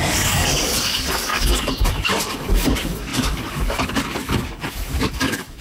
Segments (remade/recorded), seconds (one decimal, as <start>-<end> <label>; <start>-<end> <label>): 0.0-5.6 remade